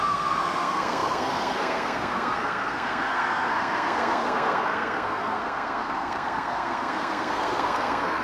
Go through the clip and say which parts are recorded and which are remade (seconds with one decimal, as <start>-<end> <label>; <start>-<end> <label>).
0.0-8.2 remade